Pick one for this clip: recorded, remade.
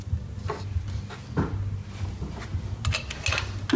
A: recorded